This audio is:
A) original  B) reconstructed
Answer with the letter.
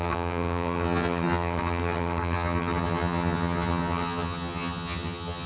B